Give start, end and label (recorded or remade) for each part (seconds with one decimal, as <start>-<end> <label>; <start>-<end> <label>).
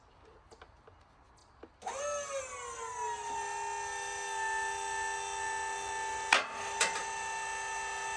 0.0-8.2 recorded